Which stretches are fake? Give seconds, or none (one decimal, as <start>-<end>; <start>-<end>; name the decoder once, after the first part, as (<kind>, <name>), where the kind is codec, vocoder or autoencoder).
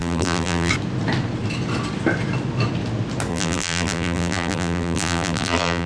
0.0-0.7 (vocoder, BigVGAN v2); 3.3-5.9